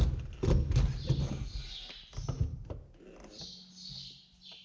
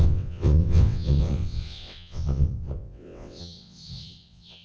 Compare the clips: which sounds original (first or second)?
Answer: first